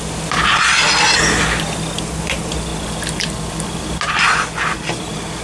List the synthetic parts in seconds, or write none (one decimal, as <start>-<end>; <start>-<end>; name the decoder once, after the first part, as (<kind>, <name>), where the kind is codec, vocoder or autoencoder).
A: none